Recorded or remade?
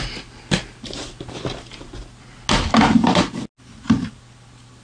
recorded